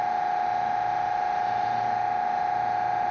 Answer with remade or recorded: recorded